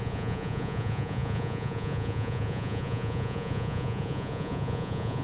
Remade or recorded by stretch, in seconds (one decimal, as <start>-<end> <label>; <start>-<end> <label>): 0.0-5.2 remade